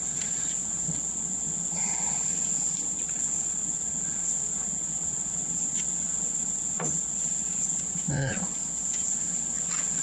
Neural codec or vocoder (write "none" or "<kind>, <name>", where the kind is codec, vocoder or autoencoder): vocoder, WaveNeXt